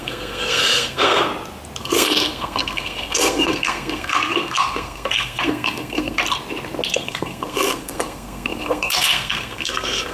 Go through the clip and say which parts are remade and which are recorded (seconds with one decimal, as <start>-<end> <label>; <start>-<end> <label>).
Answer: 0.0-1.3 remade; 1.3-1.8 recorded; 1.8-6.2 remade; 6.2-6.9 recorded; 6.9-10.1 remade

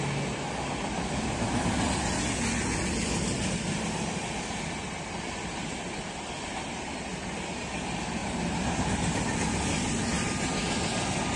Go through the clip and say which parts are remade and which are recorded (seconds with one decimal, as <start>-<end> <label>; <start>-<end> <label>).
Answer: 0.0-11.4 recorded

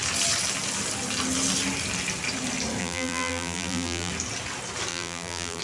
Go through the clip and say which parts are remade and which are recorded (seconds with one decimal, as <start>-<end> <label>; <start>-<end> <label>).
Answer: 0.0-2.8 recorded; 2.8-4.1 remade; 4.1-4.9 recorded; 4.9-5.6 remade

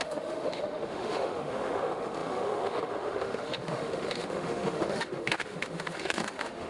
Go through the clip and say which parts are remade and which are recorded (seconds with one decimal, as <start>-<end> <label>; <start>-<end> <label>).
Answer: 0.0-6.7 remade

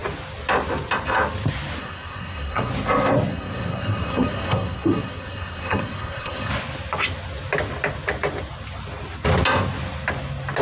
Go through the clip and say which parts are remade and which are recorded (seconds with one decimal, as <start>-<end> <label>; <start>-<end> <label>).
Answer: 0.0-1.8 recorded; 1.8-2.7 remade; 2.7-3.3 recorded; 3.3-6.5 remade; 6.5-10.6 recorded

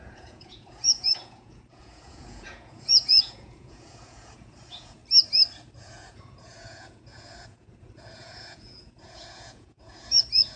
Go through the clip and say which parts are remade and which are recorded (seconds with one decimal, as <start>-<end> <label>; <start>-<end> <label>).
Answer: 0.0-5.0 remade; 5.0-5.8 recorded; 5.8-10.6 remade